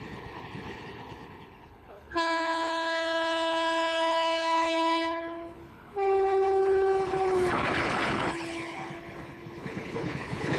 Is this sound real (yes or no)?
no